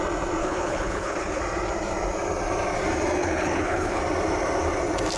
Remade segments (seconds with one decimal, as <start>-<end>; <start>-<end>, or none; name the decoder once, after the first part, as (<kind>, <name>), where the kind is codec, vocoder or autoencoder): 0.4-1.4 (codec, HILCodec); 3.2-4.0